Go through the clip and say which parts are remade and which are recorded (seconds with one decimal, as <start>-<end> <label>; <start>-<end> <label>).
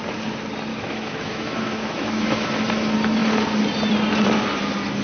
0.0-0.7 recorded; 0.7-2.5 remade; 2.5-5.0 recorded